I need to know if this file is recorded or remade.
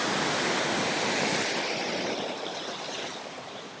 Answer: recorded